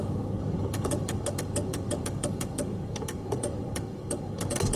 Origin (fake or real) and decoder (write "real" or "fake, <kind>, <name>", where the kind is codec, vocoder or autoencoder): fake, codec, DAC